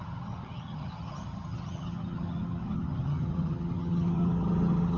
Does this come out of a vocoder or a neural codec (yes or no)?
yes